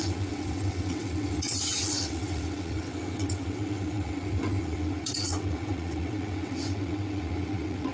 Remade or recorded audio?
remade